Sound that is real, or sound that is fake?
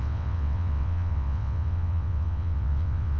fake